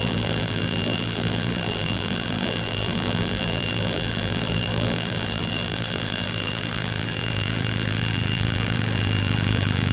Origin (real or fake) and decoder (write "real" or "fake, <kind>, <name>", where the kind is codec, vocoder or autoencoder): fake, vocoder, BigVGAN v2